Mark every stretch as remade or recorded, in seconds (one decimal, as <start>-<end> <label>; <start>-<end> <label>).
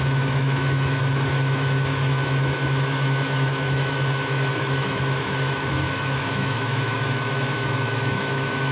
0.0-8.7 remade